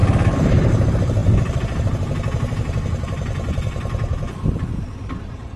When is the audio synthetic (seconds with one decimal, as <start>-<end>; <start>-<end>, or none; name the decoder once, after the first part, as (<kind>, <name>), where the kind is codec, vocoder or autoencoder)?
none